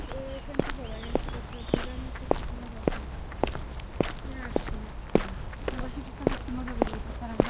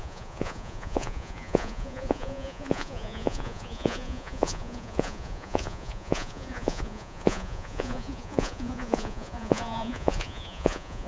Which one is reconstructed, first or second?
second